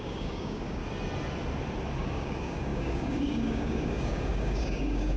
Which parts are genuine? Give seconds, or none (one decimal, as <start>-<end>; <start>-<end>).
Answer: 0.8-2.0